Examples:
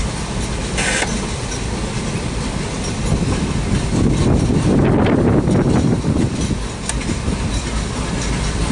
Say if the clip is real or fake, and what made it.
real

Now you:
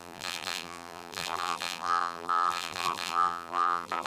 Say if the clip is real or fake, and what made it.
fake, vocoder, BigVGAN v2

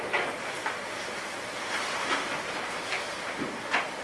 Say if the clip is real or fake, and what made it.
real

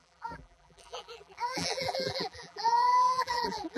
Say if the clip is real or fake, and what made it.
fake, vocoder, BigVGAN v2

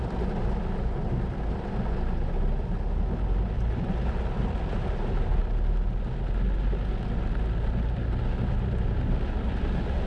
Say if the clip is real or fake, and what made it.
real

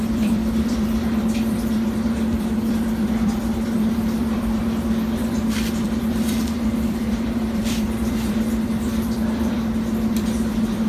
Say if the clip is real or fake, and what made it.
fake, vocoder, BigVGAN v2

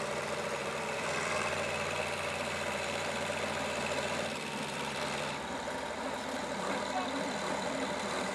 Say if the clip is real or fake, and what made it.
fake, vocoder, BigVGAN v2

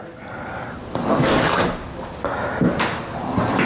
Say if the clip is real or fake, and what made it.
real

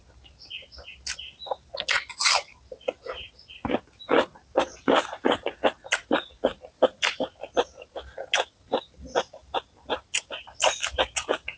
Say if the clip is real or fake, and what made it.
real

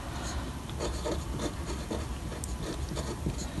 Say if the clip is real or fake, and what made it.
real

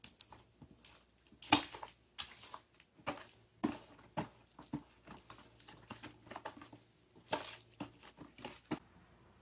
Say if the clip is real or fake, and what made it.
real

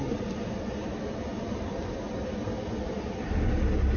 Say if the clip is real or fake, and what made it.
real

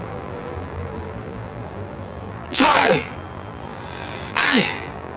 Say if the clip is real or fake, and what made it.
fake, vocoder, BigVGAN v2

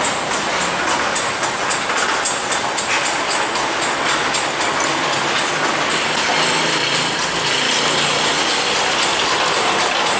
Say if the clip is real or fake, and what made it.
real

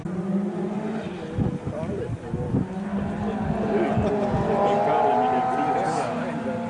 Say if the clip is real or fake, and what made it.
real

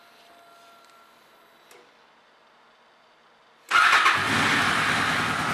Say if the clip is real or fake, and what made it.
real